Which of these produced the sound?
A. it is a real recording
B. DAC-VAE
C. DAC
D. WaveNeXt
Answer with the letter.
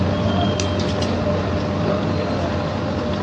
A